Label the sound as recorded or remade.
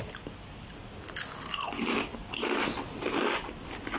recorded